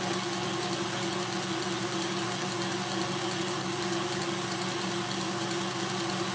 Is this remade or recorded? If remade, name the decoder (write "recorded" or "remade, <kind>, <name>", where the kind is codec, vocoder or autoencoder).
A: recorded